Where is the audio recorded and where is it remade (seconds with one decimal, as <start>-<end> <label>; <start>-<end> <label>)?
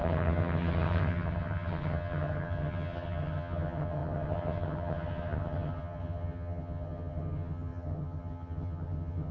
0.0-9.3 remade